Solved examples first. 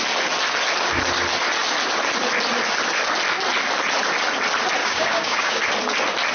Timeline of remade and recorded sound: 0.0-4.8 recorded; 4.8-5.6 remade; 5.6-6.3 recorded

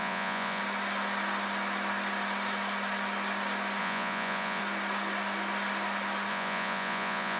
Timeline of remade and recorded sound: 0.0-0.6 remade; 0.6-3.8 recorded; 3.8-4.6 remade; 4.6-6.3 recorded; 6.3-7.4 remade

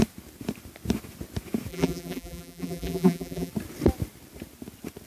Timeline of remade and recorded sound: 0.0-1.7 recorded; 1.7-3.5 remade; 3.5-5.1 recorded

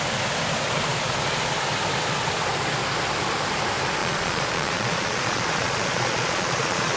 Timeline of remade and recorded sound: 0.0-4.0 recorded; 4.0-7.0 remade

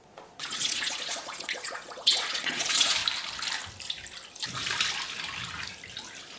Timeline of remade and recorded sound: 0.0-3.0 remade; 3.0-6.4 recorded

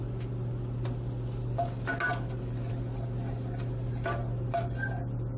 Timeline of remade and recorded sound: 0.0-5.4 recorded